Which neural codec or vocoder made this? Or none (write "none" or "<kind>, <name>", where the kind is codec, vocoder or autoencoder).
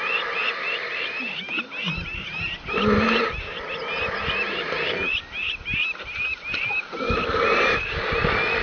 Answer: none